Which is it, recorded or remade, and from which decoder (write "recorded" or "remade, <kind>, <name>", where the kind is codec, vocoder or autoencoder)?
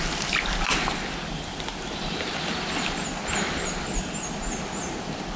recorded